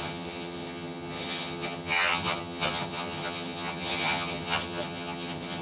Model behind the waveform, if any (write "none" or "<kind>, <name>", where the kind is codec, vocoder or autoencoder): vocoder, HiFi-GAN